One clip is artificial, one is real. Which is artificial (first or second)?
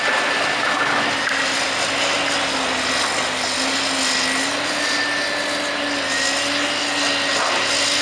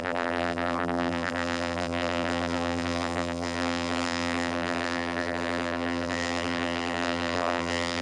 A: second